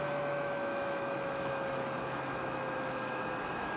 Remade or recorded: remade